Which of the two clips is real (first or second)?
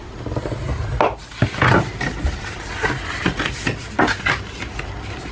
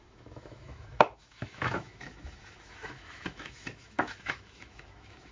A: first